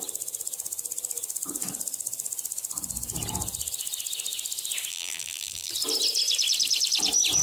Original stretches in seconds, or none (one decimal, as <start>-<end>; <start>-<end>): 0.0-4.9; 5.7-7.4

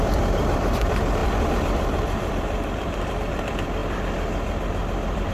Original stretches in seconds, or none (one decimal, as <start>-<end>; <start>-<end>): 3.8-5.3

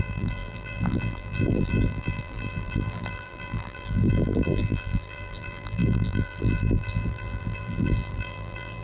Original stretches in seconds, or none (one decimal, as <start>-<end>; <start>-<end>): none

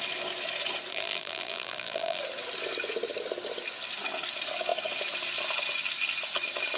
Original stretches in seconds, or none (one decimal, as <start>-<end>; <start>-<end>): 0.0-0.9; 2.2-6.8

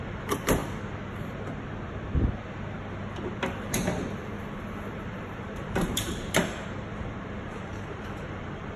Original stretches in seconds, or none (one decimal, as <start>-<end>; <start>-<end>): 0.6-4.6

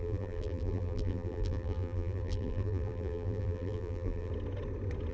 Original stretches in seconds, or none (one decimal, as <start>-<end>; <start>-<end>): 4.3-5.1

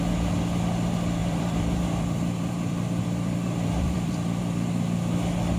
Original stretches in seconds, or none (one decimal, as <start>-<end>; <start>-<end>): 0.0-1.2; 4.4-5.6